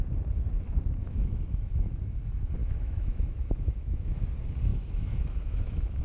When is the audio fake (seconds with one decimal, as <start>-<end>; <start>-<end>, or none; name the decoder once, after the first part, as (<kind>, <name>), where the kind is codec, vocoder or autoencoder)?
1.0-2.2 (autoencoder, DAC-VAE); 2.6-4.3; 4.7-6.0